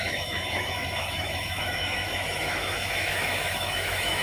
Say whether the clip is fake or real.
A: fake